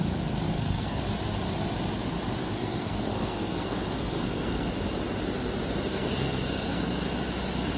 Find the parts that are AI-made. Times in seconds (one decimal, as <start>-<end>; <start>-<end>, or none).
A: 0.5-1.0; 2.4-4.7; 5.9-6.9